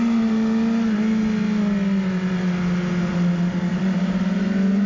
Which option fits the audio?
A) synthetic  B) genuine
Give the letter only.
B